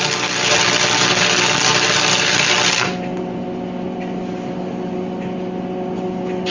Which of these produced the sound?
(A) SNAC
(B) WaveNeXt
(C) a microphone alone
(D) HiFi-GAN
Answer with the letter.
C